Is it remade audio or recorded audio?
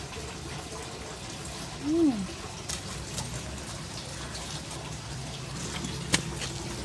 recorded